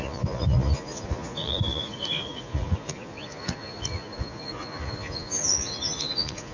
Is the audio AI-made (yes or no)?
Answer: yes